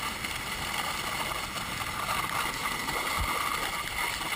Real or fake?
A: real